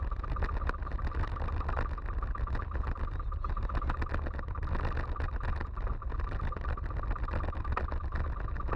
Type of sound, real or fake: real